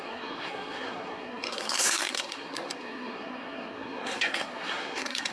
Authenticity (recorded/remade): remade